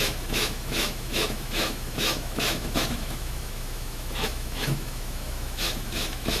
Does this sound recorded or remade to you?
remade